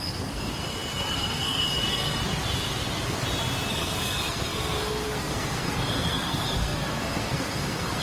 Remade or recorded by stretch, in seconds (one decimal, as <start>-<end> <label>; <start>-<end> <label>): 0.0-2.2 remade; 2.2-3.7 recorded; 3.7-8.0 remade